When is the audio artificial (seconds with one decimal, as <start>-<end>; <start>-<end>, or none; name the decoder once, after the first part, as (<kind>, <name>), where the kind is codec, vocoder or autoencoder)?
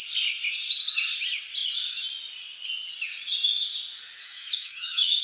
4.2-5.2 (autoencoder, DAC-VAE)